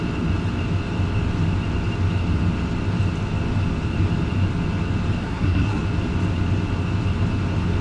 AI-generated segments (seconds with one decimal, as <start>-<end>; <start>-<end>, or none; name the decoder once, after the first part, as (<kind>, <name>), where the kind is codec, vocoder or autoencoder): 5.2-5.8 (codec, SNAC)